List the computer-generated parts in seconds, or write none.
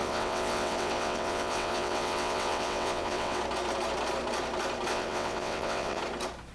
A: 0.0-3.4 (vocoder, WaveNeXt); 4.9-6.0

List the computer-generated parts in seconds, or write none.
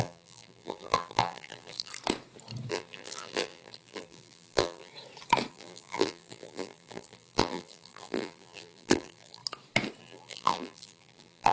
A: 0.0-1.9 (vocoder, BigVGAN v2); 2.7-4.9; 5.5-9.4; 10.0-11.5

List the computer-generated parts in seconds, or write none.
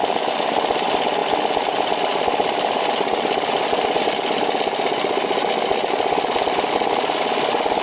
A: none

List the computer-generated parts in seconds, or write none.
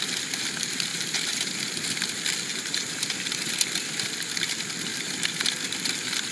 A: 0.9-1.5 (vocoder, BigVGAN v2); 2.5-3.2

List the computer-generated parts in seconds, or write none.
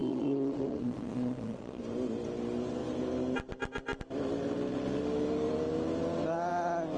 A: 0.0-1.8 (vocoder, Vocos)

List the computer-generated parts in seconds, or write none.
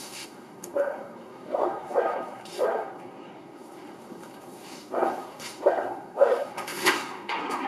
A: 0.0-7.7 (codec, SNAC)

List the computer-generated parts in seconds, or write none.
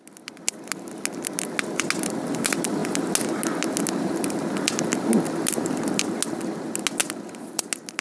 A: none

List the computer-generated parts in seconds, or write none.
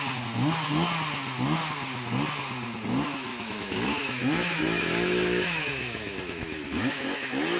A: 3.3-7.6 (autoencoder, DAC-VAE)